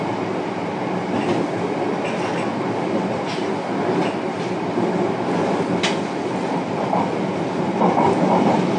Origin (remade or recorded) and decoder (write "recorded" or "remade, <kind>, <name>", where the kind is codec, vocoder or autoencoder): recorded